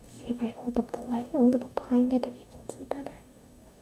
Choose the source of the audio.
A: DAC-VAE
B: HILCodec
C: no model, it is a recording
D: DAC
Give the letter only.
D